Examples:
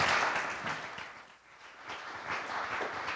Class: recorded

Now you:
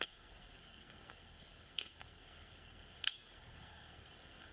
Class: remade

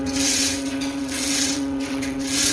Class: remade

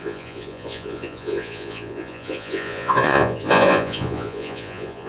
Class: remade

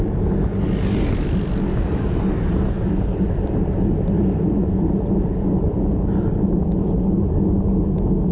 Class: recorded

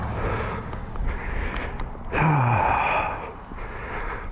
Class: recorded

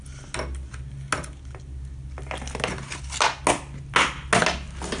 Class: recorded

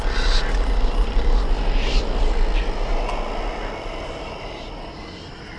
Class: recorded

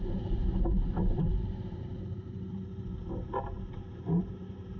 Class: remade